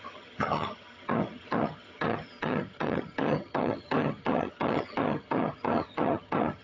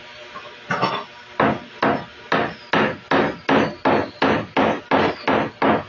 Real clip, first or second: second